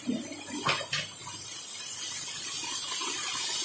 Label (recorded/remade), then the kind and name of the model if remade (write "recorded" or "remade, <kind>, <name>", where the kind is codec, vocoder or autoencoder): recorded